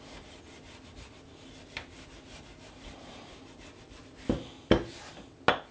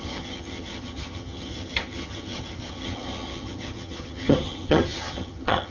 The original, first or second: first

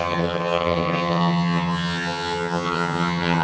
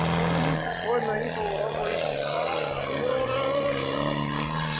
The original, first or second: second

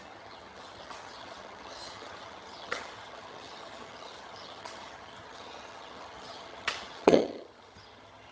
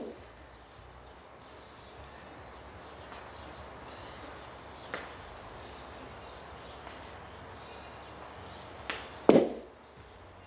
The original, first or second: second